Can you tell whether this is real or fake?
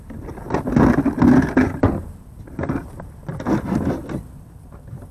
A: fake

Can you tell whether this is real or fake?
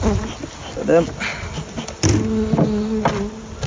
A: real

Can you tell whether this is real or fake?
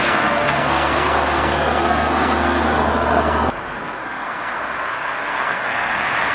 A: fake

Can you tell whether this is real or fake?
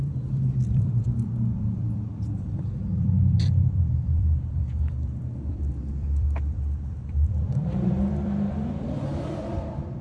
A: fake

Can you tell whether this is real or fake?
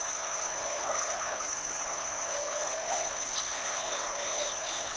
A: fake